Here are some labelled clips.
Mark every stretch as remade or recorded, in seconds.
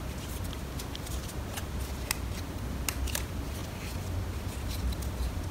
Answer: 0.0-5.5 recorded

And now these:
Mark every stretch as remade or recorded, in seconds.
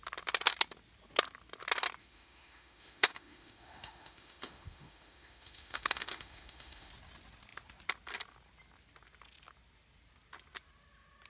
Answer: 0.0-2.0 recorded; 2.0-6.9 remade; 6.9-11.3 recorded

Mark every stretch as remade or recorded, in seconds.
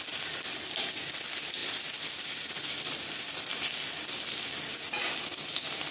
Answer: 0.0-5.9 recorded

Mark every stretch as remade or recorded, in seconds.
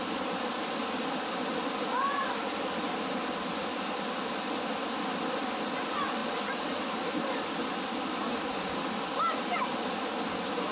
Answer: 0.0-10.7 recorded